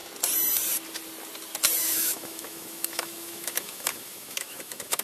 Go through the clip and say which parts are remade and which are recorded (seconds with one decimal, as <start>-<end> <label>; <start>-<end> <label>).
0.0-1.8 recorded; 1.8-5.0 remade